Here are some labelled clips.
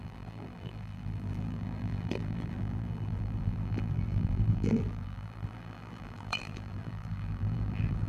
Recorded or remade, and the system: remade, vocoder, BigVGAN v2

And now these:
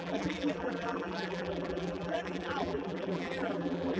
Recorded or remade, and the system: remade, vocoder, BigVGAN v2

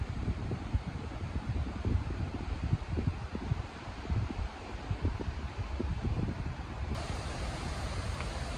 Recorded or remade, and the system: remade, vocoder, BigVGAN v2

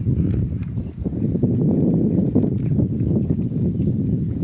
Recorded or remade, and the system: remade, vocoder, BigVGAN v2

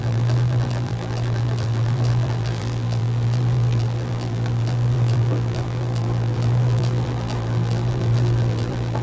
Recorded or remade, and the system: remade, vocoder, BigVGAN v2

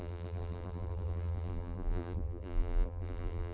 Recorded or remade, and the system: remade, vocoder, BigVGAN v2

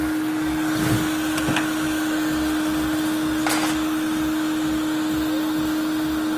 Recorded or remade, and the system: recorded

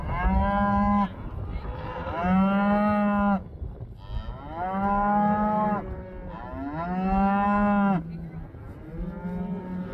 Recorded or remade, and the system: recorded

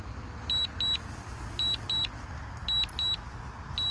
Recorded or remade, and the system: recorded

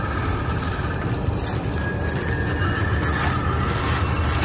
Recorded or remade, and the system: remade, vocoder, BigVGAN v2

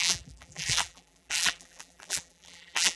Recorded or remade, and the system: remade, vocoder, BigVGAN v2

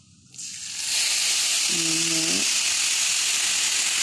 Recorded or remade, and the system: recorded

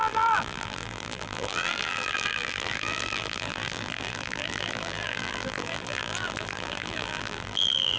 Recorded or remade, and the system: remade, vocoder, BigVGAN v2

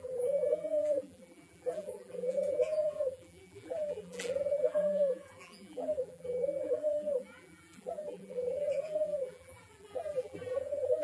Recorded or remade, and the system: remade, vocoder, BigVGAN v2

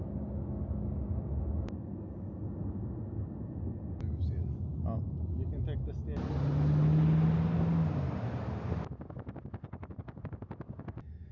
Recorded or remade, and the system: recorded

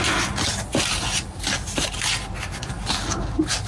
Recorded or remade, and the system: recorded